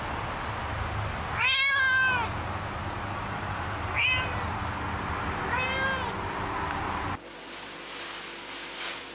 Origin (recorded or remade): recorded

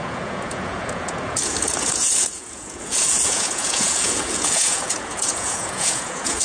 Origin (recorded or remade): remade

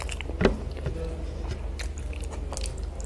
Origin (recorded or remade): recorded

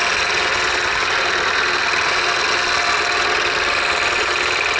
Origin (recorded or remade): recorded